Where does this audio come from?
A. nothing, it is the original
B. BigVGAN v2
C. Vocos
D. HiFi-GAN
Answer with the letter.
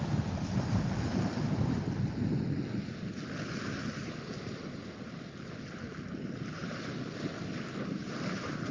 A